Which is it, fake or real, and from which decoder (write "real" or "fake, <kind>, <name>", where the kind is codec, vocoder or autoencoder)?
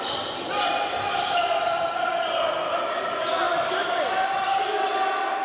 real